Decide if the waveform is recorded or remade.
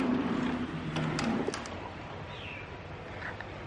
recorded